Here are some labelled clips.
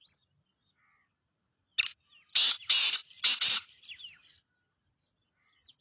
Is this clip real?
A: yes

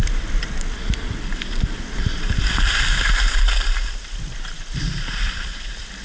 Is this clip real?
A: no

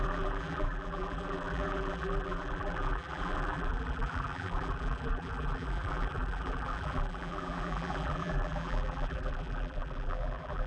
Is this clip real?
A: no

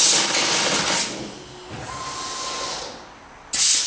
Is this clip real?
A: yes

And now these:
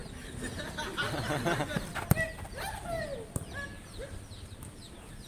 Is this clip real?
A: yes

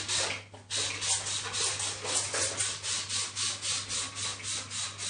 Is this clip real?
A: yes